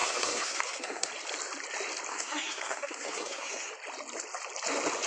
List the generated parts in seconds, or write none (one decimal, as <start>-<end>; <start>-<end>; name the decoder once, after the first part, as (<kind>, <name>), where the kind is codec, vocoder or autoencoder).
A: 0.0-1.1 (codec, SNAC); 2.1-3.7